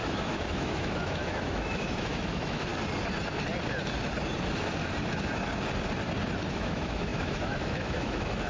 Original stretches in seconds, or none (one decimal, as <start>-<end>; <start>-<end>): 2.7-6.5